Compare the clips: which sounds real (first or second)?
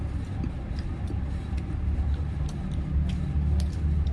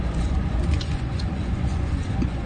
first